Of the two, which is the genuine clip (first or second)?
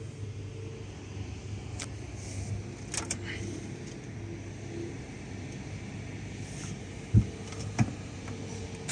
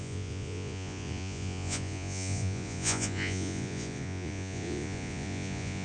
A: first